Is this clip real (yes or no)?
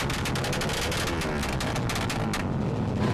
yes